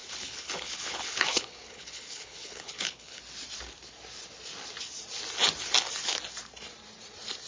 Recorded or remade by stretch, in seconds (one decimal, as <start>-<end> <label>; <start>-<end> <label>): 0.0-3.2 remade; 3.2-7.5 recorded

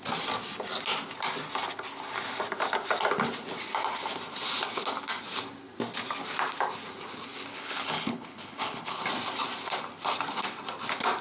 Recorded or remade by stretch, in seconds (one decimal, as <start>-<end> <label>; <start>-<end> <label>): 0.0-7.5 recorded; 7.5-9.0 remade; 9.0-11.2 recorded

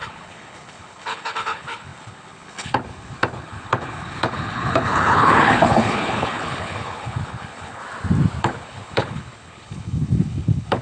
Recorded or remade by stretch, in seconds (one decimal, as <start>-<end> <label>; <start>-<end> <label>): 0.0-7.8 remade; 7.8-8.4 recorded; 8.4-10.8 remade

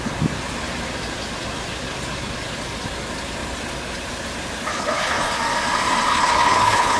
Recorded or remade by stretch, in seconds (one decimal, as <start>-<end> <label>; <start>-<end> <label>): 0.0-4.7 recorded; 4.7-5.4 remade; 5.4-6.1 recorded; 6.1-7.0 remade

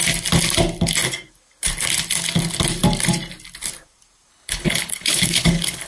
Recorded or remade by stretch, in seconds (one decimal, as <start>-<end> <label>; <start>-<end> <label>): 0.0-4.3 recorded; 4.3-5.9 remade